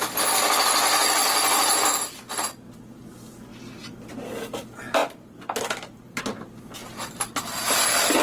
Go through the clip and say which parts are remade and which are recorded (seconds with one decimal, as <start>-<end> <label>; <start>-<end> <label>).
0.0-1.2 recorded; 1.2-2.2 remade; 2.2-5.0 recorded; 5.0-6.2 remade; 6.2-8.2 recorded